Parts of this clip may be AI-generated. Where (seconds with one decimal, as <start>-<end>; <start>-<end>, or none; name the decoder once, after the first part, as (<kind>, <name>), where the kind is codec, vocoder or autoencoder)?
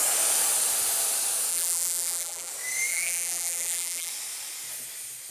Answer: 1.5-2.5 (vocoder, BigVGAN v2); 2.9-4.1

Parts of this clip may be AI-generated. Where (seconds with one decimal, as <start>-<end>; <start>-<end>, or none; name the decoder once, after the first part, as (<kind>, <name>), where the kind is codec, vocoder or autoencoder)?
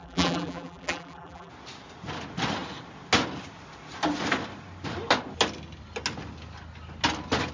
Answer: 0.0-1.5 (vocoder, BigVGAN v2)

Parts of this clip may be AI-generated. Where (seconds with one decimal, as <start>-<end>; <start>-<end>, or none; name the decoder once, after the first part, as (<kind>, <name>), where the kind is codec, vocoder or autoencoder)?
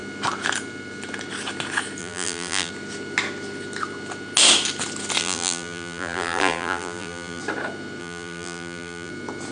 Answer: 2.0-2.7 (vocoder, BigVGAN v2); 5.2-7.4; 8.0-9.1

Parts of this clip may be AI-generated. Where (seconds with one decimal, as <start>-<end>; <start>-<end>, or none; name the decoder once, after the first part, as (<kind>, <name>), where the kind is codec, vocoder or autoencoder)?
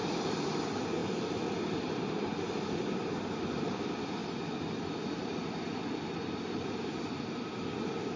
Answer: 0.0-1.0 (vocoder, BigVGAN v2); 1.7-8.2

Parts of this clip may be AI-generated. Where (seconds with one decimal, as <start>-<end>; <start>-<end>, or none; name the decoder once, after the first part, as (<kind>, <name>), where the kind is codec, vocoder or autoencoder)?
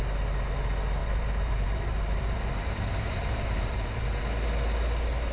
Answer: 1.0-4.2 (vocoder, BigVGAN v2)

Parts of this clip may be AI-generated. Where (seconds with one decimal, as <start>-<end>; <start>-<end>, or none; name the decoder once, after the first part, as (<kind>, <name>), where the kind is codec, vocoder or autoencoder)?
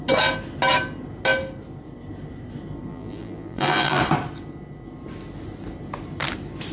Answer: 2.9-4.0 (vocoder, BigVGAN v2)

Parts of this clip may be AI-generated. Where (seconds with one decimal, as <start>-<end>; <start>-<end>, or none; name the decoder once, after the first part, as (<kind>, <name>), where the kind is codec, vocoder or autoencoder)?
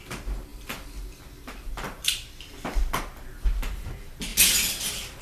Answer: 0.5-3.0 (vocoder, BigVGAN v2)